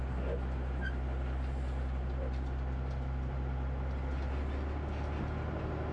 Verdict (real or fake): real